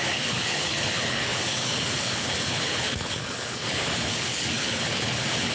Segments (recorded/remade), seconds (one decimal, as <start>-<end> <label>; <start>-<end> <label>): 0.0-5.5 remade